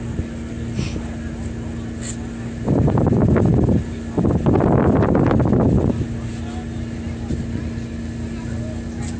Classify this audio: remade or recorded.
recorded